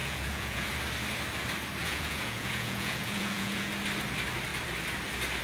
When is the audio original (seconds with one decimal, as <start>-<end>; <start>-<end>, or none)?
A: 0.7-1.8; 3.7-5.4